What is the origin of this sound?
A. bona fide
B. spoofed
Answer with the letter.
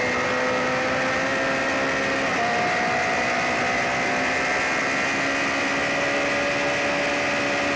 A